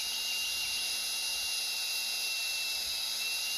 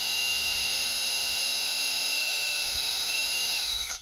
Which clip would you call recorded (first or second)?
first